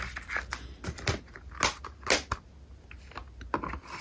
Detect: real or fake real